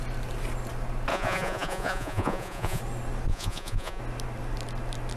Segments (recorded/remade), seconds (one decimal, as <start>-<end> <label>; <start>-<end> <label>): 0.0-1.1 recorded; 1.1-2.8 remade; 2.8-3.3 recorded; 3.3-4.0 remade; 4.0-5.2 recorded